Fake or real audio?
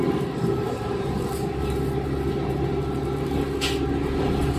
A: real